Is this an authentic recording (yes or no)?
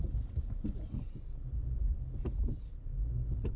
yes